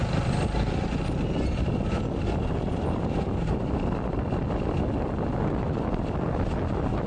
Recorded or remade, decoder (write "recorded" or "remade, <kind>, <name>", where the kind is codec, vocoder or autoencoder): recorded